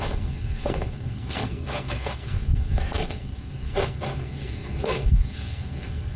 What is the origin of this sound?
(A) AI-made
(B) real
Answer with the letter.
A